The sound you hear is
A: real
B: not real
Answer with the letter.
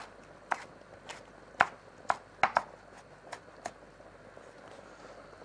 A